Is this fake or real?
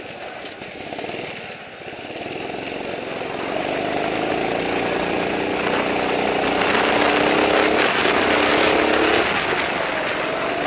real